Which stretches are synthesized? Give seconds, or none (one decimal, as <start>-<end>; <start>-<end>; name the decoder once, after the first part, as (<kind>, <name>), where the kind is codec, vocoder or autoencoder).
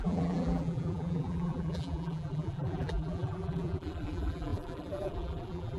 0.0-5.8 (vocoder, BigVGAN v2)